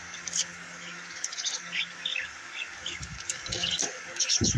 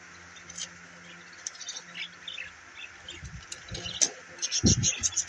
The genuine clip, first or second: second